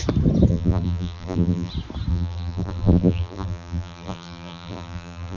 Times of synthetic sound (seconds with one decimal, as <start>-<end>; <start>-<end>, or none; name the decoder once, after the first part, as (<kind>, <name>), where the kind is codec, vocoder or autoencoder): 0.5-1.7 (vocoder, BigVGAN v2); 2.1-5.4